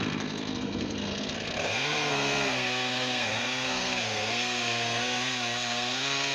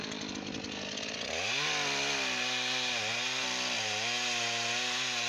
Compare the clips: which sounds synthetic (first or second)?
first